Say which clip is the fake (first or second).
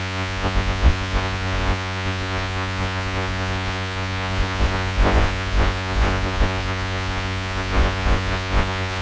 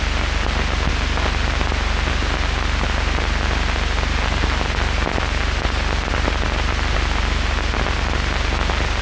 first